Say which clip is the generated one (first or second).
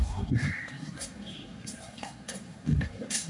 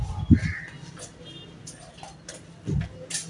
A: first